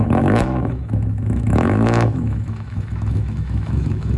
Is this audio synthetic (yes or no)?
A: yes